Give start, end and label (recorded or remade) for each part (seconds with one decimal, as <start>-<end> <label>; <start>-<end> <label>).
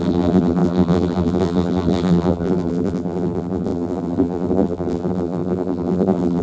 0.0-6.4 remade